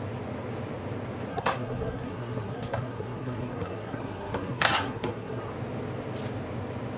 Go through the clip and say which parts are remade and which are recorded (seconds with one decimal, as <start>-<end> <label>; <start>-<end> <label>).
0.0-1.3 recorded; 1.3-5.5 remade; 5.5-7.0 recorded